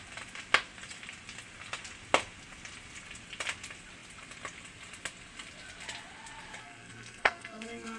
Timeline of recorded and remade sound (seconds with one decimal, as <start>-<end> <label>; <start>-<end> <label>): 0.0-6.6 recorded; 6.6-8.0 remade